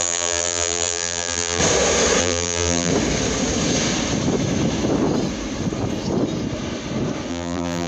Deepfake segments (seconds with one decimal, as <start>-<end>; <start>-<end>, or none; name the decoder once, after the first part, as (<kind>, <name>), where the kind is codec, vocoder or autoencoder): 0.0-1.6 (vocoder, BigVGAN v2); 2.2-2.9; 7.3-7.9